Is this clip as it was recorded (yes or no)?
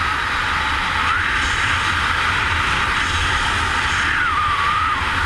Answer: yes